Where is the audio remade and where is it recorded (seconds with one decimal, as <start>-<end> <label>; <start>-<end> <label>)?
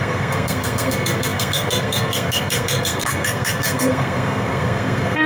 0.0-5.3 remade